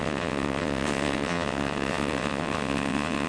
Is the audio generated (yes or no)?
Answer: yes